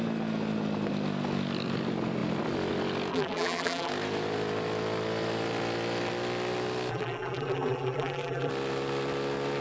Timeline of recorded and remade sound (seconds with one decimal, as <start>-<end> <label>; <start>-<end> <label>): 0.0-3.1 recorded; 3.1-3.9 remade; 3.9-6.9 recorded; 6.9-8.5 remade; 8.5-9.6 recorded